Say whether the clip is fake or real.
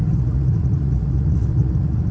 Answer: fake